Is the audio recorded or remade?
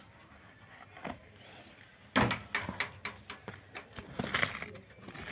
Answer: recorded